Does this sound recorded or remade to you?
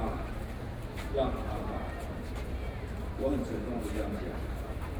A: remade